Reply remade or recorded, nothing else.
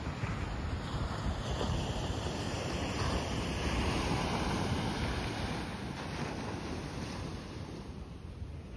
recorded